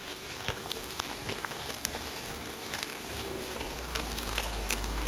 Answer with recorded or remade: remade